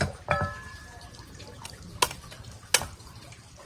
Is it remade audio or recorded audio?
remade